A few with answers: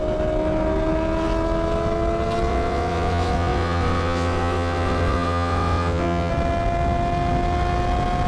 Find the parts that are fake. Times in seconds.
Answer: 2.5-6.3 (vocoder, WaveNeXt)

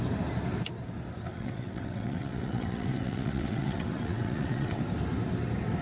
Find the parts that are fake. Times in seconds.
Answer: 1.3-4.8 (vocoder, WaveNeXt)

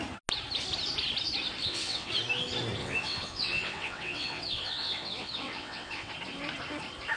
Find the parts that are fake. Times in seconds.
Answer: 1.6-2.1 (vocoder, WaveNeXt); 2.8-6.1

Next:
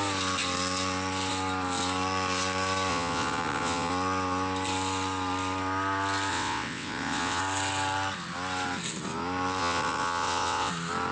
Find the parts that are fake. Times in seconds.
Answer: 2.9-3.9 (vocoder, WaveNeXt); 6.3-7.4; 9.6-10.7

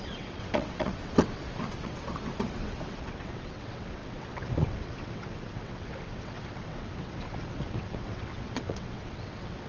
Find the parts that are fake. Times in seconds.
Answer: 0.0-9.7 (vocoder, WaveNeXt)

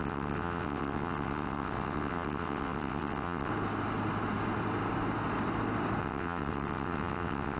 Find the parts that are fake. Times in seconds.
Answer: 0.0-3.5 (vocoder, WaveNeXt); 6.0-7.6

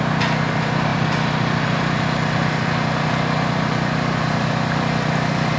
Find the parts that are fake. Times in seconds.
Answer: none

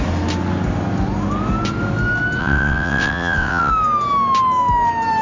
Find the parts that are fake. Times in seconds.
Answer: 2.4-3.7 (vocoder, WaveNeXt)